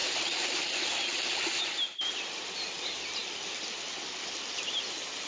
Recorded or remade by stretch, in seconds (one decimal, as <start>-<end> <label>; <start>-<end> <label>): 0.0-5.3 recorded